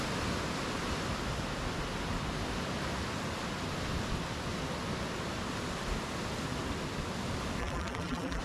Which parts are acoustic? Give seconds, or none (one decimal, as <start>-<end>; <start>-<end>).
0.0-7.6